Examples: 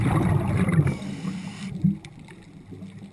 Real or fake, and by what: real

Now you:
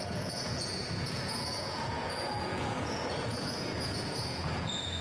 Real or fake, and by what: fake, vocoder, Vocos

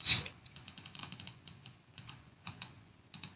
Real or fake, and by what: fake, vocoder, Vocos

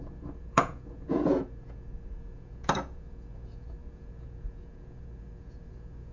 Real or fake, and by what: fake, vocoder, Vocos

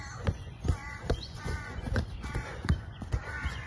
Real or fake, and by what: fake, vocoder, Vocos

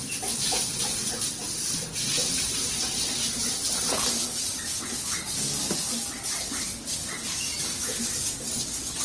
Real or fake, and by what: real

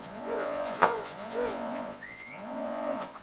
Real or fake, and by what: fake, vocoder, Vocos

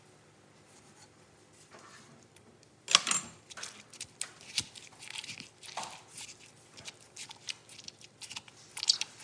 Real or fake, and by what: real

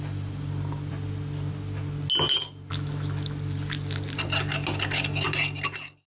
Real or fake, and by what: real